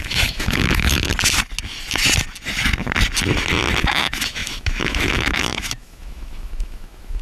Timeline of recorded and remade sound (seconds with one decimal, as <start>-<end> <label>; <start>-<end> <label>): 0.0-1.1 remade; 1.1-3.8 recorded; 3.8-7.2 remade